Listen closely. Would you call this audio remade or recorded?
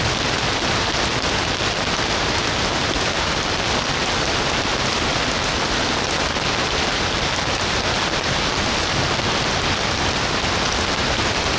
recorded